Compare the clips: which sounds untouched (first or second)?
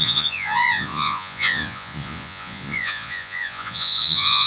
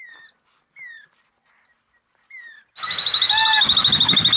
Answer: second